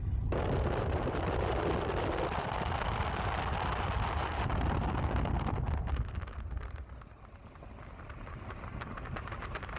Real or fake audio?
real